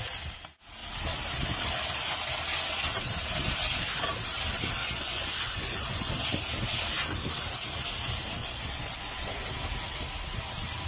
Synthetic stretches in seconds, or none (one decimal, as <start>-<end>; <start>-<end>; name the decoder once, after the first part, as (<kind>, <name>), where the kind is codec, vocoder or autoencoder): 4.8-6.1 (vocoder, Vocos); 8.4-9.4